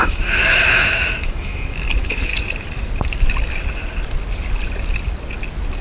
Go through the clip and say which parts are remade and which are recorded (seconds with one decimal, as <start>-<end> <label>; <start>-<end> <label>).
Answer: 0.0-2.3 remade; 2.3-5.8 recorded